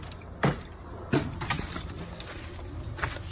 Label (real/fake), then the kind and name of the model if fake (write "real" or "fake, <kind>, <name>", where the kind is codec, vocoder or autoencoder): real